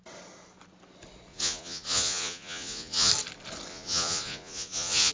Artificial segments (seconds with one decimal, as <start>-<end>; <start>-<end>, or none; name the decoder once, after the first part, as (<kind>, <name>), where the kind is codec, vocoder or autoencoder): 1.3-3.1 (vocoder, Vocos); 3.7-5.1